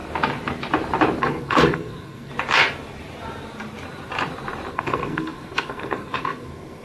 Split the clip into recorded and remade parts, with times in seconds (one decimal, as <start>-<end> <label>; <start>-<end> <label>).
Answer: 0.0-1.2 recorded; 1.2-2.3 remade; 2.3-4.7 recorded; 4.7-6.8 remade